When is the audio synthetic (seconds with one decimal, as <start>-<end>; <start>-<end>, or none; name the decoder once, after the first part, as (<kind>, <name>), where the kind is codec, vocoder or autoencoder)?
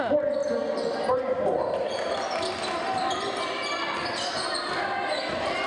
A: none